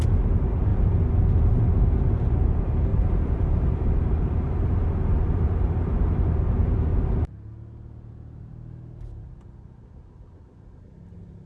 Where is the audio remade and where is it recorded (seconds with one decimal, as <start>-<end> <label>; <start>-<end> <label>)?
0.0-2.9 recorded; 2.9-6.2 remade; 6.2-11.5 recorded